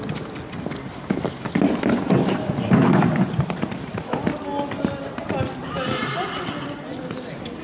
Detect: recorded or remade recorded